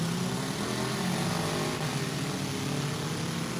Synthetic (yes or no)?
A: no